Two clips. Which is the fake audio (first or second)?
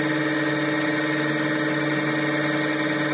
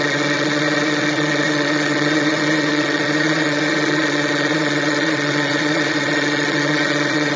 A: second